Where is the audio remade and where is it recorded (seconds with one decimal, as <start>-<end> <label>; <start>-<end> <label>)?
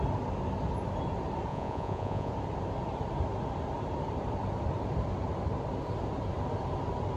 0.0-1.5 recorded; 1.5-2.3 remade; 2.3-7.2 recorded